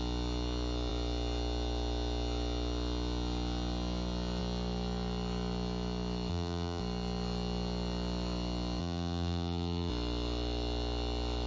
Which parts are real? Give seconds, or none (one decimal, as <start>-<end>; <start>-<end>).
0.0-6.3; 6.8-8.8; 9.9-11.5